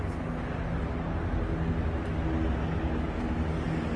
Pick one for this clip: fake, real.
real